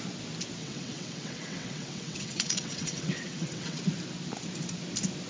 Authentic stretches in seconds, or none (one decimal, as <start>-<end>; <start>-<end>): 0.0-0.6; 3.8-5.3